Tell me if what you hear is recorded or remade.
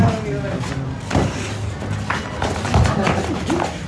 recorded